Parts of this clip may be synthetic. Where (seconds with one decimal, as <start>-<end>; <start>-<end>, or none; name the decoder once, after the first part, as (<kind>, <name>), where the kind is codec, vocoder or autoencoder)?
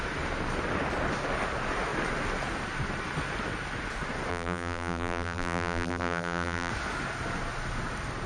4.3-6.7 (vocoder, BigVGAN v2)